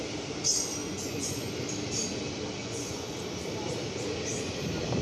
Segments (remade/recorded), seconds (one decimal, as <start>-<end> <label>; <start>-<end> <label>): 0.0-0.8 recorded; 0.8-1.5 remade; 1.5-2.6 recorded; 2.6-3.2 remade; 3.2-5.0 recorded